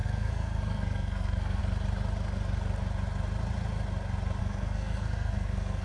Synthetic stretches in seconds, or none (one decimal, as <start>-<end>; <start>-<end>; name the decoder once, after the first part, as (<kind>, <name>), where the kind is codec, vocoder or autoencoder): 0.0-1.6 (codec, SNAC); 4.4-5.8